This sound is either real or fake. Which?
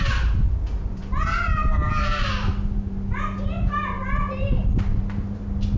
real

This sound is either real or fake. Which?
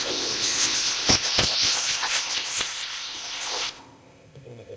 fake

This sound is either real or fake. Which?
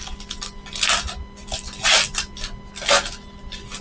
real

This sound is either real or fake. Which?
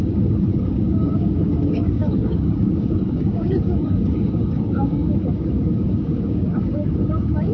fake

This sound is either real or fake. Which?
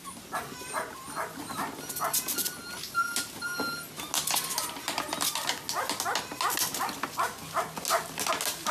real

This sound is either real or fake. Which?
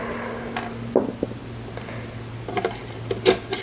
real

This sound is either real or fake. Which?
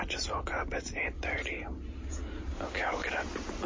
real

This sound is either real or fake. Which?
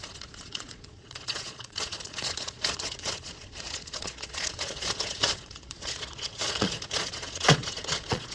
fake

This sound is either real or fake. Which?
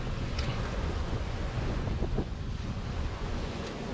fake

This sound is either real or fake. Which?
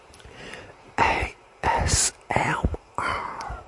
fake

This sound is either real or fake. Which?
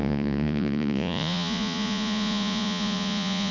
fake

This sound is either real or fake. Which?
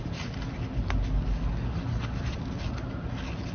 real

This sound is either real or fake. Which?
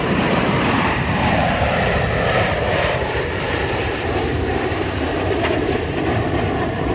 fake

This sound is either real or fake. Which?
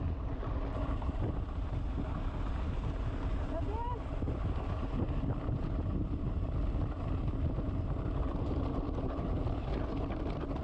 real